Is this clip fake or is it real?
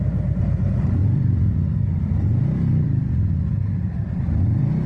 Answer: fake